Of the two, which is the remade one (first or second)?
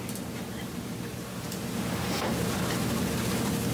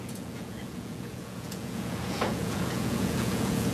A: second